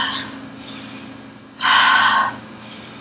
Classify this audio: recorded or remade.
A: recorded